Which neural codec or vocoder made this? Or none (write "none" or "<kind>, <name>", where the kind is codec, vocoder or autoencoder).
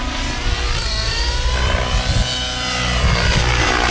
none